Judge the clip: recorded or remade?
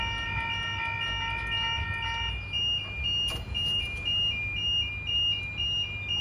recorded